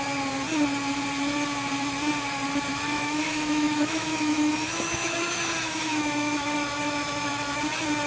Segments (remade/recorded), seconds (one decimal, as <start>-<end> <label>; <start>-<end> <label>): 0.0-2.7 recorded; 2.7-7.6 remade; 7.6-8.1 recorded